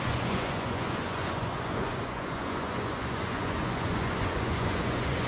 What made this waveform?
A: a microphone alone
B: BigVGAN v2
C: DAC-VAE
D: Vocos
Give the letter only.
D